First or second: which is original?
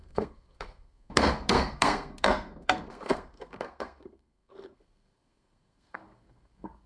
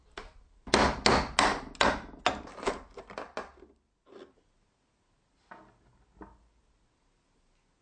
second